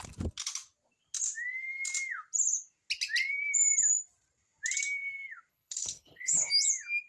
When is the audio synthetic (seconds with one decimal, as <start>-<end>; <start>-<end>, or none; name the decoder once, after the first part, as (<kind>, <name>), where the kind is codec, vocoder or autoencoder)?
5.5-6.5 (codec, HILCodec)